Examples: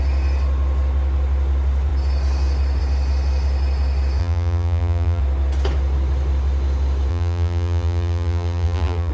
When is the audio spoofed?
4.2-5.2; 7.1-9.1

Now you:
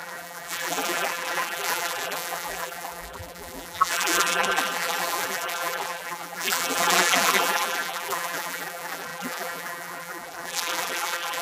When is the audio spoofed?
0.0-11.4

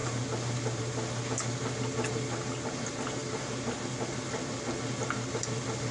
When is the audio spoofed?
none

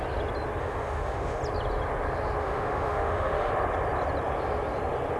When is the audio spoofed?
0.6-1.4; 2.4-3.5

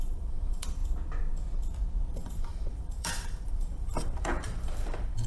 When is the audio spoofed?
0.0-0.8; 2.1-5.3

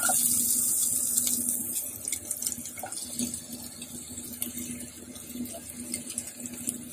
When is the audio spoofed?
none

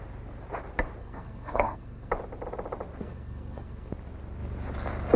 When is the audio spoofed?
1.0-2.1; 3.0-3.9

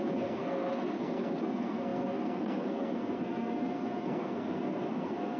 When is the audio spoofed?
0.0-5.4